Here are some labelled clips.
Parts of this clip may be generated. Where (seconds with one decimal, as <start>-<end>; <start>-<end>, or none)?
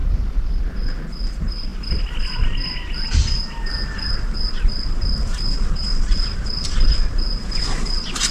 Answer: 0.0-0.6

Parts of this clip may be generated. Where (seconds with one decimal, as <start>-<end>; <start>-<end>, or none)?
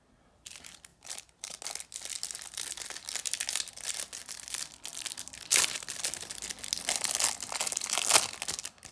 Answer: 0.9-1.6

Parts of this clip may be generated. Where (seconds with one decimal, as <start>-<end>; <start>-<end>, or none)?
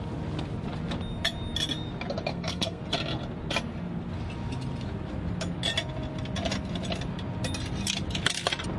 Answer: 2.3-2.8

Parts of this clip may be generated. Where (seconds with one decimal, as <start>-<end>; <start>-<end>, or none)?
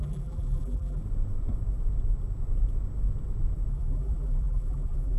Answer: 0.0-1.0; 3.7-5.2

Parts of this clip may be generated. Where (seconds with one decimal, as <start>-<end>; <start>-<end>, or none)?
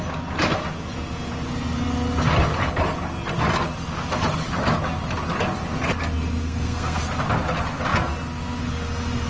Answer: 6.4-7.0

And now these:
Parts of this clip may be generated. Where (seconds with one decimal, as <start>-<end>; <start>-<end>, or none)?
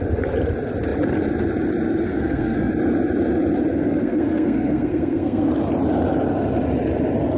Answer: 2.0-2.7; 3.7-5.5